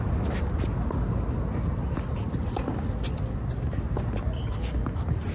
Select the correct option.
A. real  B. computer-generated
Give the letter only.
A